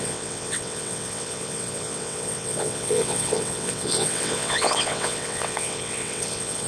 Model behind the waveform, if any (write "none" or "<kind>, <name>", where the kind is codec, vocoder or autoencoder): vocoder, WaveNeXt